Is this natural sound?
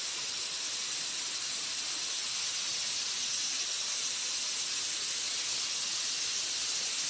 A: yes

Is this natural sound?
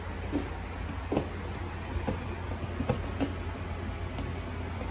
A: yes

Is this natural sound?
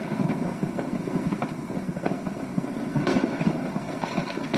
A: no